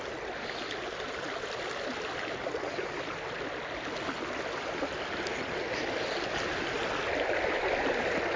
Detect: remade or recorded recorded